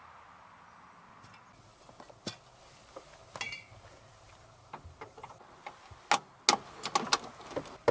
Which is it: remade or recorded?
recorded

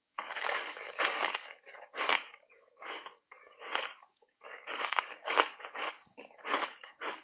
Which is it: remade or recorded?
remade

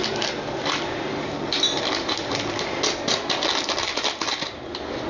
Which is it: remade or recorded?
recorded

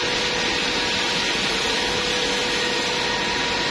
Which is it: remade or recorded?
recorded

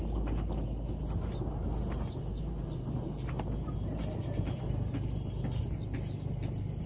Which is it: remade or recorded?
recorded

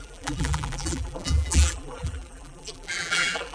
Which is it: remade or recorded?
remade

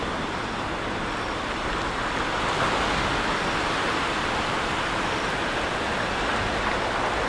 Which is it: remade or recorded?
recorded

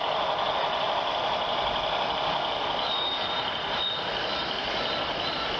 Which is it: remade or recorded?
recorded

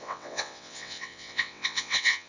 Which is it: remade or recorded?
remade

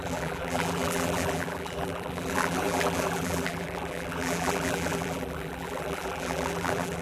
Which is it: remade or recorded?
remade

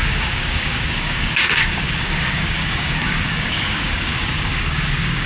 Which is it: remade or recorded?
remade